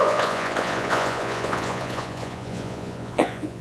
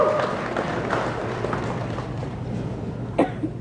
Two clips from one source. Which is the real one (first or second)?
second